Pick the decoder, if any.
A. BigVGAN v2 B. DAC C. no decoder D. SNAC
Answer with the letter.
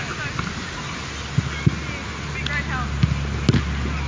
C